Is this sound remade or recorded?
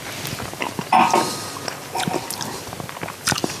recorded